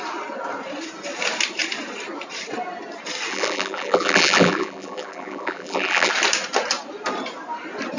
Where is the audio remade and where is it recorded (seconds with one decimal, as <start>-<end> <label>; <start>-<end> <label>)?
0.0-3.3 recorded; 3.3-6.1 remade; 6.1-8.0 recorded